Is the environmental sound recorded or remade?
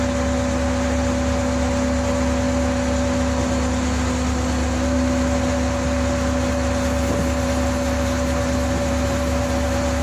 recorded